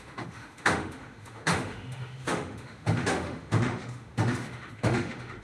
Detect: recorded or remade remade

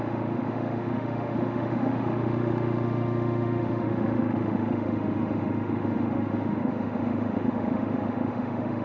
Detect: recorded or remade remade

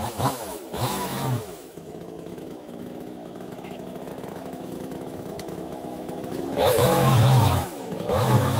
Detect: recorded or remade remade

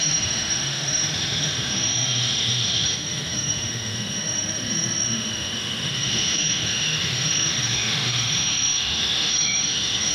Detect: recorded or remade remade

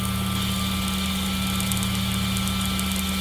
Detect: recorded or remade recorded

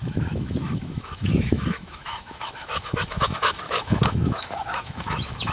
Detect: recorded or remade remade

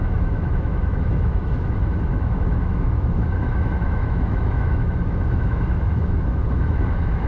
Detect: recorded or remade remade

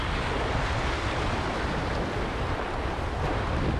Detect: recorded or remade recorded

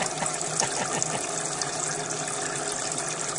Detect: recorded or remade recorded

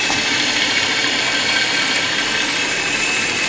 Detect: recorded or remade recorded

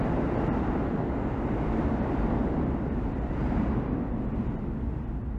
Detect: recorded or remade recorded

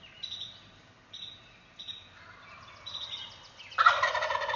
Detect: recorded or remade recorded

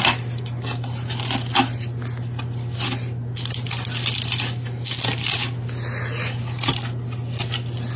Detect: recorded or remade recorded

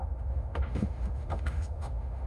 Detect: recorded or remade remade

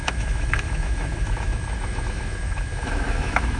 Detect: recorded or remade remade